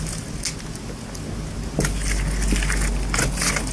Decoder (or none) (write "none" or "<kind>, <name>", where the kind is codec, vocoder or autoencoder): none